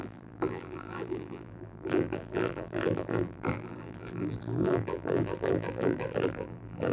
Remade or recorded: remade